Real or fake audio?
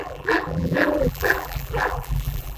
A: fake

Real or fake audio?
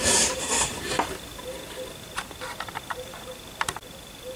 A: fake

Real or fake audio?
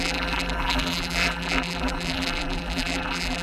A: fake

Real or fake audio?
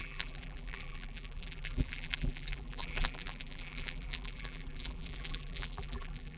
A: fake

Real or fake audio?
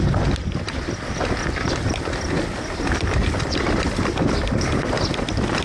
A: fake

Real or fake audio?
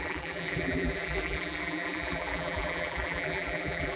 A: fake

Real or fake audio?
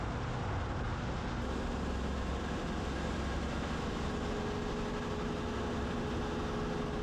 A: real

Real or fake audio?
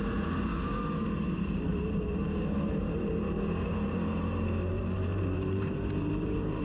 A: fake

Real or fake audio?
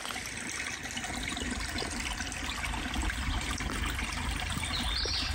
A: real